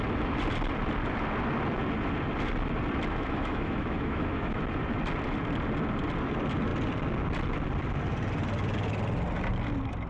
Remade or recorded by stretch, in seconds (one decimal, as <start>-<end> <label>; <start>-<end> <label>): 0.0-3.1 recorded; 3.1-4.6 remade; 4.6-10.1 recorded